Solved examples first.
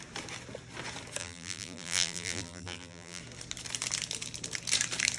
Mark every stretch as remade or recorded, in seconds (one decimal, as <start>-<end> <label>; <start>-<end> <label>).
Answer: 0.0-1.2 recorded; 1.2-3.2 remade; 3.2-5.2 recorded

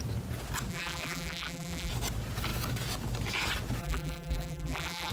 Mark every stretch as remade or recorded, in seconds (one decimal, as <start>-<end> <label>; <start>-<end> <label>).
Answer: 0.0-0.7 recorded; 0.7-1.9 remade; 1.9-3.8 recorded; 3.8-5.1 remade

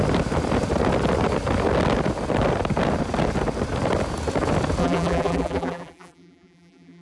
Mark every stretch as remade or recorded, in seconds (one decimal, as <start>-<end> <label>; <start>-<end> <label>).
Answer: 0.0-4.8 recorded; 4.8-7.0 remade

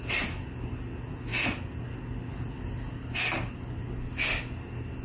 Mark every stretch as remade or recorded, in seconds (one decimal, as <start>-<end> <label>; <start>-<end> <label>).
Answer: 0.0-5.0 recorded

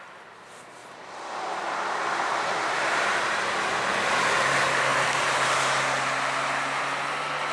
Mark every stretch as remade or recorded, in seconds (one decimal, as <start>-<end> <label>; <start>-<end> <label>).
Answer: 0.0-0.8 recorded; 0.8-3.7 remade; 3.7-7.5 recorded

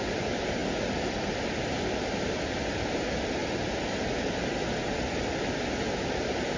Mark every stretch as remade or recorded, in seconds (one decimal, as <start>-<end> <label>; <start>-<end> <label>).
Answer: 0.0-0.6 remade; 0.6-1.2 recorded; 1.2-3.4 remade; 3.4-6.1 recorded; 6.1-6.6 remade